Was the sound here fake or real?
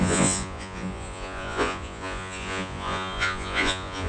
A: fake